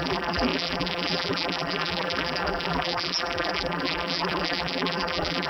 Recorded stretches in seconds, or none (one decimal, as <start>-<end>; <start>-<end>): none